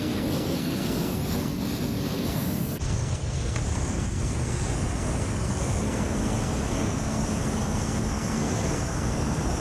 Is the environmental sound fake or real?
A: fake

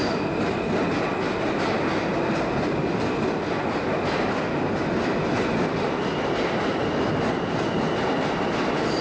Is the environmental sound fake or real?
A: real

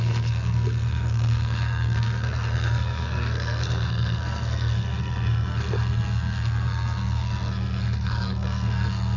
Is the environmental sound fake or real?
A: fake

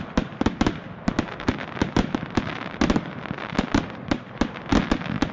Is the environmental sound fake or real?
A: real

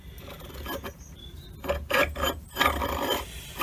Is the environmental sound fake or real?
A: real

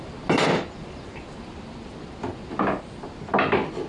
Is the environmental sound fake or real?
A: real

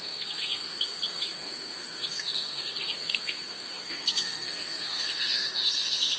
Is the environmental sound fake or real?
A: fake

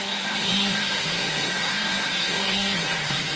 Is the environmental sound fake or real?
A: fake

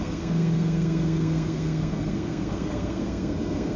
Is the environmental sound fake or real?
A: fake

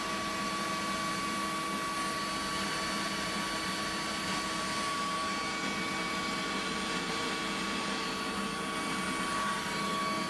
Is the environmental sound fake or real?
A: real